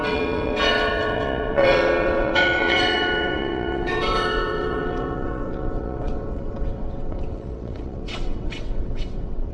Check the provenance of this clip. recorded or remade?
remade